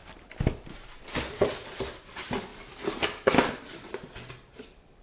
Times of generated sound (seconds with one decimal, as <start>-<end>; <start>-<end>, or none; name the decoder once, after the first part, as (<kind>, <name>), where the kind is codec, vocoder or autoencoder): none